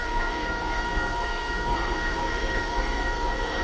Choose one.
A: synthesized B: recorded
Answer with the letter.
A